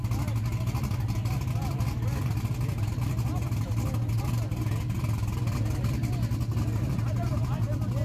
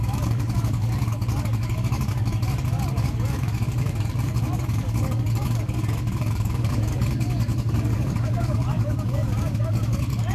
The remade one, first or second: second